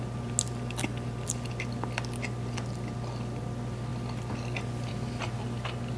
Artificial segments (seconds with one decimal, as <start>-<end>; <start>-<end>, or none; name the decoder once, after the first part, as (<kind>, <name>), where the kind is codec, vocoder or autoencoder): none